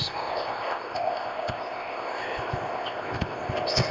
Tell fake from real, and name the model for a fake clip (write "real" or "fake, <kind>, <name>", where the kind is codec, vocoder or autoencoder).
fake, codec, ZipCodec